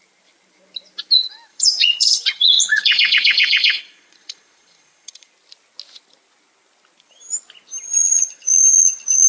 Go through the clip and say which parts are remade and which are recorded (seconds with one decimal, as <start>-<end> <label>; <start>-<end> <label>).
0.0-1.5 recorded; 1.5-5.3 remade; 5.3-8.0 recorded; 8.0-9.3 remade